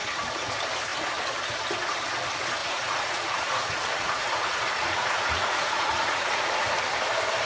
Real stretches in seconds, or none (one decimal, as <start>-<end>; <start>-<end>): 0.5-2.6; 6.7-7.5